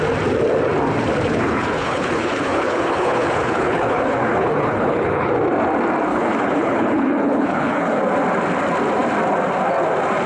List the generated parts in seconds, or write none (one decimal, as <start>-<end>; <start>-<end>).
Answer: 1.3-5.3; 6.1-8.0